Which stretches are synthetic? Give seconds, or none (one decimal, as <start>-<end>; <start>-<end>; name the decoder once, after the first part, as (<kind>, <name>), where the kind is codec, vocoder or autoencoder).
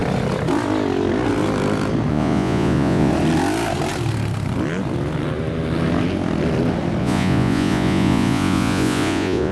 2.1-3.1 (vocoder, Vocos); 7.0-9.5